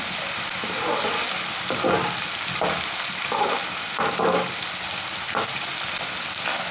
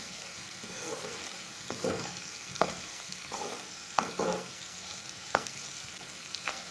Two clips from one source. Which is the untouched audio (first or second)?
first